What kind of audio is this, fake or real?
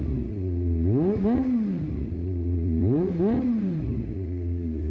fake